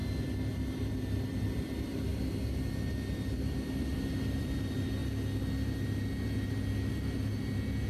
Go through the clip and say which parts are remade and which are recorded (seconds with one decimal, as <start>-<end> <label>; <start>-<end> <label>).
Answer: 0.0-0.5 recorded; 0.5-2.1 remade; 2.1-2.9 recorded; 2.9-5.0 remade; 5.0-7.9 recorded